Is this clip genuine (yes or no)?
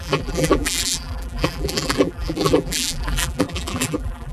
no